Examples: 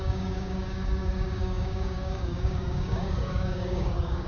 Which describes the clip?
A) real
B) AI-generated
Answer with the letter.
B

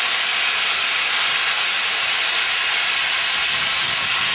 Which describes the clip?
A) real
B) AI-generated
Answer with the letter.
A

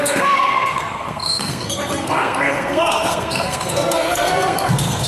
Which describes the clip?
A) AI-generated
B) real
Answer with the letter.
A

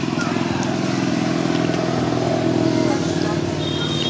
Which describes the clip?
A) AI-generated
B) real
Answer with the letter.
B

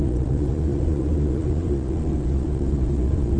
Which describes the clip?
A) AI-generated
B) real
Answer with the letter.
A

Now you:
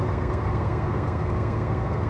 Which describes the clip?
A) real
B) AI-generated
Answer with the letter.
B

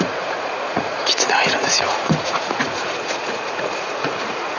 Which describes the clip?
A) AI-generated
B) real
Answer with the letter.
A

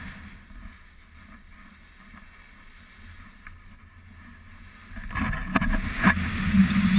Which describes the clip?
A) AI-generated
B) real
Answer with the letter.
B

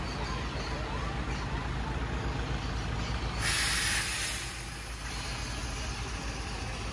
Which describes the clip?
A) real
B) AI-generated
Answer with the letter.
A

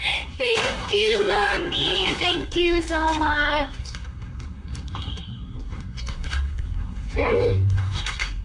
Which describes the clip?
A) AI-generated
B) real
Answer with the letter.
A